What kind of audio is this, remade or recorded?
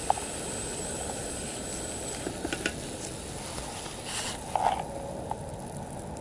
recorded